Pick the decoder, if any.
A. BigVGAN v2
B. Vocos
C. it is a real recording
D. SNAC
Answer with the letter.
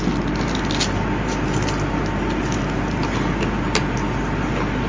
C